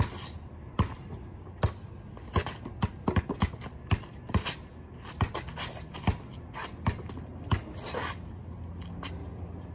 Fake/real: real